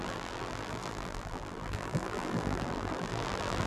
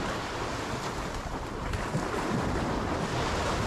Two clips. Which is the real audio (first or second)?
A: second